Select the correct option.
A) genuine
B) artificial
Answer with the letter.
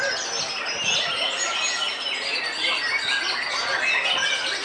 A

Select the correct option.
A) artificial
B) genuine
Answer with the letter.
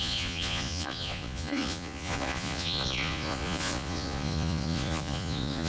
A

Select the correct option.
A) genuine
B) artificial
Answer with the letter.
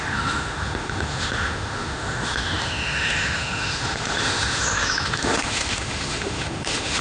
B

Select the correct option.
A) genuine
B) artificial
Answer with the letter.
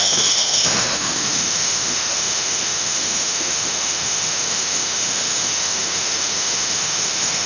B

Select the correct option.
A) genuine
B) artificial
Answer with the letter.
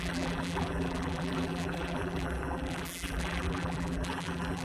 B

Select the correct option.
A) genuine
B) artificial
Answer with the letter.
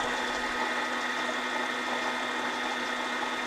A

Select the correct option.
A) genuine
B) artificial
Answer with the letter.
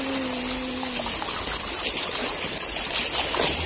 A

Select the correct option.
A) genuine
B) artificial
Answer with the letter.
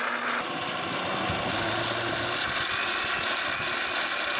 A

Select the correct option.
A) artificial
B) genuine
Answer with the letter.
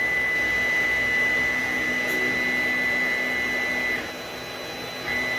B